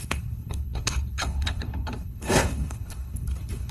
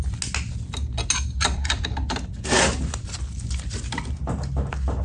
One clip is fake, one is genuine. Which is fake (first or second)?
first